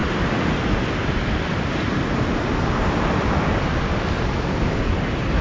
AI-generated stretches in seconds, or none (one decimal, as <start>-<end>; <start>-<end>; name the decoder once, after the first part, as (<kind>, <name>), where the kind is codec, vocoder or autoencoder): none